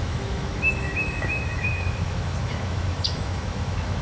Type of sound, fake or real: fake